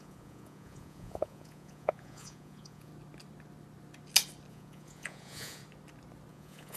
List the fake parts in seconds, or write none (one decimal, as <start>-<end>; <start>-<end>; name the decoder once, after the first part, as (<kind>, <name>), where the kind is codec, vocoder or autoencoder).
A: 0.0-2.9 (vocoder, Vocos); 4.5-5.6; 6.3-6.8